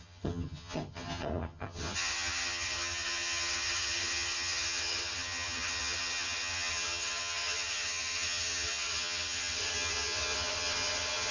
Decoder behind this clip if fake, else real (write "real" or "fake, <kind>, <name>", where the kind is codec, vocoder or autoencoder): fake, vocoder, HiFi-GAN